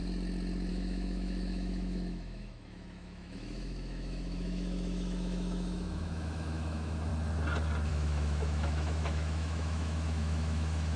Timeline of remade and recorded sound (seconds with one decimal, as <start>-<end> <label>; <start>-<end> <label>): 0.0-0.7 recorded; 0.7-7.1 remade; 7.1-7.9 recorded; 7.9-11.0 remade